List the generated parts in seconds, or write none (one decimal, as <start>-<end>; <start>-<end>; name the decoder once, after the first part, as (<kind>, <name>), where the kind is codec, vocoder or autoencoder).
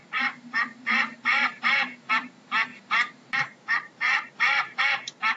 0.0-2.1 (vocoder, BigVGAN v2); 2.7-4.8